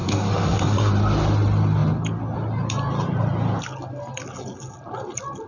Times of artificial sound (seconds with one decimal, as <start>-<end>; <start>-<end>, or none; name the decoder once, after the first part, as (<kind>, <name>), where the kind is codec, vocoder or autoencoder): 0.0-0.9 (codec, SNAC)